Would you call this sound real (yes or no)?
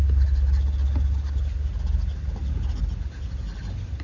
yes